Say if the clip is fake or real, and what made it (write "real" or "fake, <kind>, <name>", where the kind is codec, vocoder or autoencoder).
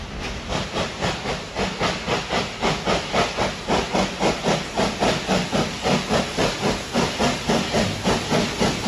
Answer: real